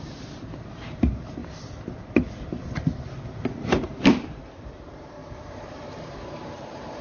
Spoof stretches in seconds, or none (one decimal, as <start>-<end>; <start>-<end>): 0.0-1.4; 3.7-7.0